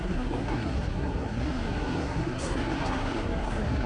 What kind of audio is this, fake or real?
fake